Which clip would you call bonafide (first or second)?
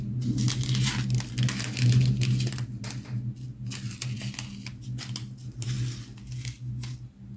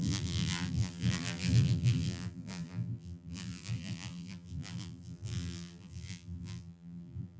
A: first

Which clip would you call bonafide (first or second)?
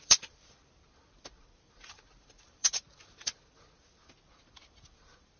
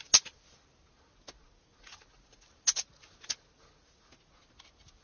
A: second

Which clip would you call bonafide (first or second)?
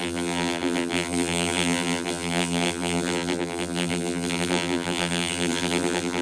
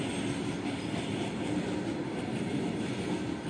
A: second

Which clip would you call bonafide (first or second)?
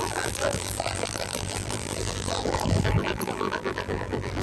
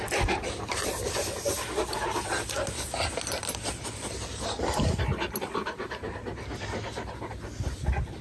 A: second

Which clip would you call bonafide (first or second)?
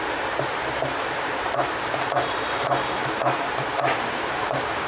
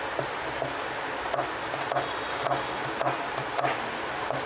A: second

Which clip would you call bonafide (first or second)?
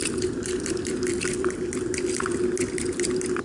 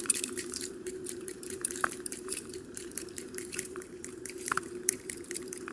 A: first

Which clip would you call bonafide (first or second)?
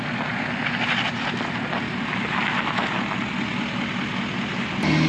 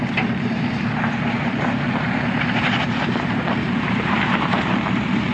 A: first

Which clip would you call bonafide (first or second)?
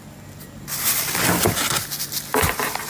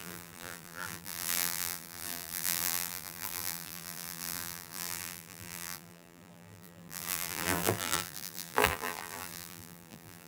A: first